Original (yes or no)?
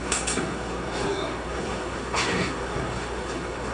no